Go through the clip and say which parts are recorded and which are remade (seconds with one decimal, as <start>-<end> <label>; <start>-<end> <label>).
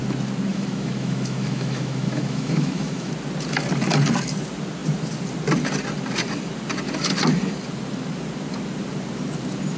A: 0.0-0.5 recorded; 0.5-3.1 remade; 3.1-9.8 recorded